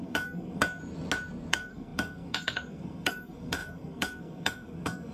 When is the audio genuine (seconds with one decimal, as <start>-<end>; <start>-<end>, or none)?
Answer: 0.8-1.5